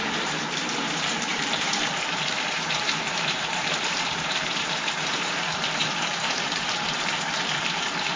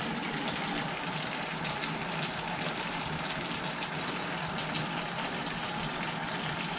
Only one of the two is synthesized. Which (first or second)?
first